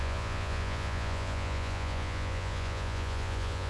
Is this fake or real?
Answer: fake